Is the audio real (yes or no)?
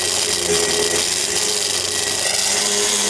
yes